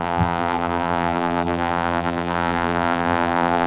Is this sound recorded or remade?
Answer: remade